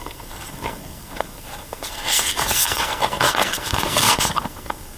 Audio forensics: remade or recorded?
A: remade